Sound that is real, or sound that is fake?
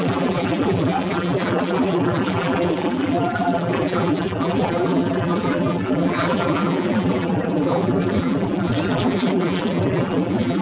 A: fake